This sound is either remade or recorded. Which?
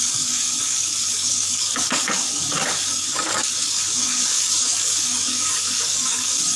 remade